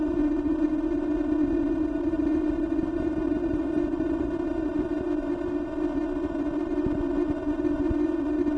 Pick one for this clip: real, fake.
fake